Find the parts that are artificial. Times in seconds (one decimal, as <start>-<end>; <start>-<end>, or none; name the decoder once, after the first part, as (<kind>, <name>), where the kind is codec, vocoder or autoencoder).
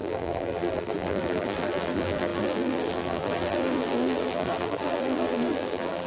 0.0-6.1 (vocoder, BigVGAN v2)